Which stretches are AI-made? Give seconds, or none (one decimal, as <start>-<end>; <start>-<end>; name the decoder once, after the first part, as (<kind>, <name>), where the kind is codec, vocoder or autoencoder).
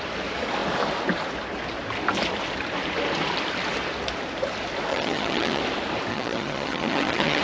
4.9-5.6 (vocoder, HiFi-GAN); 6.1-7.4